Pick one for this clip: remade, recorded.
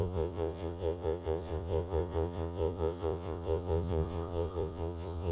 remade